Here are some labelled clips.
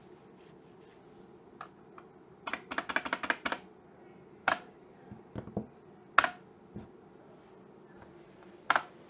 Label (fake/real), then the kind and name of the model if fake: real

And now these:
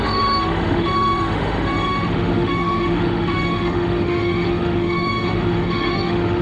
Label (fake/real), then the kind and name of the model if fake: fake, autoencoder, DAC-VAE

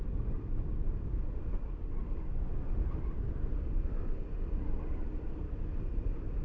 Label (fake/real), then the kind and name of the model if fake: real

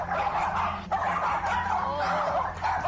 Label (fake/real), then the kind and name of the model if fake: real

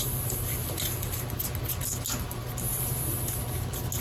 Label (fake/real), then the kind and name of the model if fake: real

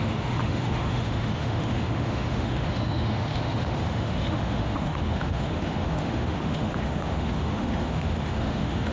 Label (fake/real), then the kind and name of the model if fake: fake, autoencoder, DAC-VAE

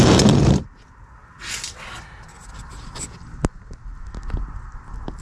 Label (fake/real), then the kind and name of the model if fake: real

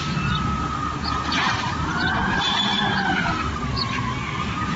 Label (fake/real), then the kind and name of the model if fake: real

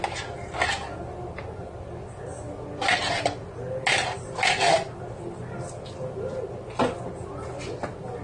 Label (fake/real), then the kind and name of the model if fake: real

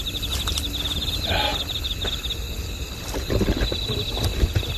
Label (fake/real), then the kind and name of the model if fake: real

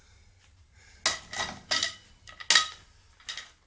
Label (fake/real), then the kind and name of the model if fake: real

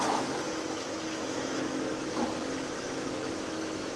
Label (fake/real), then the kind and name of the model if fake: fake, autoencoder, DAC-VAE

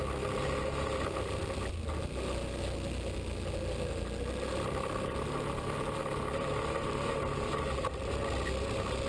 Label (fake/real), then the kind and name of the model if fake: real